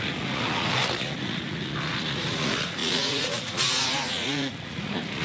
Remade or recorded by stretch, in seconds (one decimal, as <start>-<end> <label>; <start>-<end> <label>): 0.0-5.2 remade

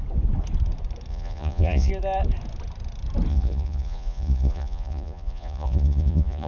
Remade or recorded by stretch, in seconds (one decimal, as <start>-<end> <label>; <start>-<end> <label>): 0.0-1.1 recorded; 1.1-1.9 remade; 1.9-3.3 recorded; 3.3-6.5 remade

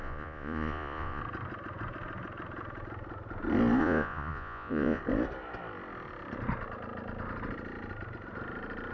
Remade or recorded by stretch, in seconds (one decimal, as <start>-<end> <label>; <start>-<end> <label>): 0.0-1.2 remade; 1.2-3.8 recorded; 3.8-5.0 remade; 5.0-8.9 recorded